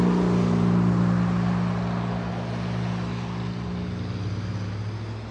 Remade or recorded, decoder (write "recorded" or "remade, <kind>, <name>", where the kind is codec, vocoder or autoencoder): recorded